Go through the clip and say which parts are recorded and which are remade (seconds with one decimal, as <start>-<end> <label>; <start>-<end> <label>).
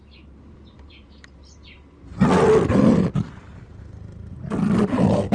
0.0-5.3 recorded